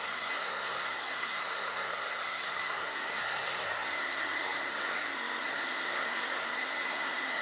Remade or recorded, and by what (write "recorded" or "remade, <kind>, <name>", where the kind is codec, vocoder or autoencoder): remade, codec, SNAC